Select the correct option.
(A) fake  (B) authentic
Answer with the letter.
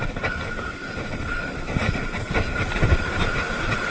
B